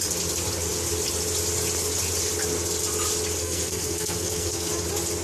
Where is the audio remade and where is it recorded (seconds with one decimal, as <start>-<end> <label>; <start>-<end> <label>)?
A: 0.0-3.4 recorded; 3.4-4.7 remade; 4.7-5.2 recorded